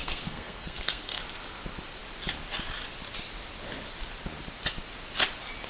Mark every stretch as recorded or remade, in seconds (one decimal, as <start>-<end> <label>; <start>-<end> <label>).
0.0-1.2 remade; 1.2-5.7 recorded

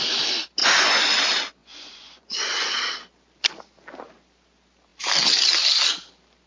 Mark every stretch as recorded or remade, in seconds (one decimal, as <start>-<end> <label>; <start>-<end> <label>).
0.0-0.6 recorded; 0.6-1.2 remade; 1.2-1.6 recorded; 1.6-2.7 remade; 2.7-6.5 recorded